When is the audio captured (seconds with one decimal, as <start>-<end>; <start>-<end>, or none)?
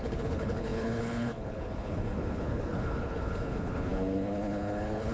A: none